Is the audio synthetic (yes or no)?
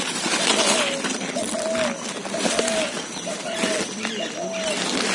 no